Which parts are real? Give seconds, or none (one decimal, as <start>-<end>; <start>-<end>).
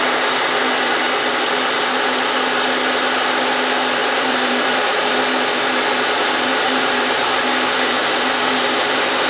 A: 0.0-4.0; 5.1-6.5; 7.2-9.3